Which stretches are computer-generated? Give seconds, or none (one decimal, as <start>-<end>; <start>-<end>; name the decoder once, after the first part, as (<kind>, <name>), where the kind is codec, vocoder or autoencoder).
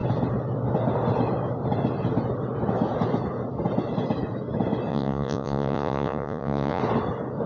4.9-6.8 (vocoder, Vocos)